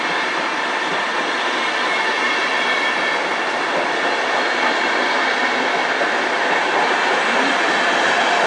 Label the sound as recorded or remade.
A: recorded